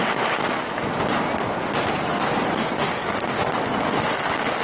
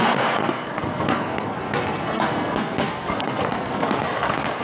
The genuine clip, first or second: first